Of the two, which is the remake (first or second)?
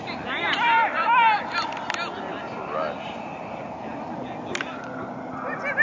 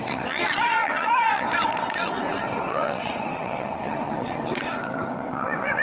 second